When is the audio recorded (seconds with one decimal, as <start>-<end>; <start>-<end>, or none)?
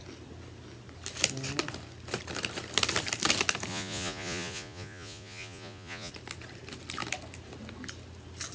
0.0-3.7; 6.1-8.5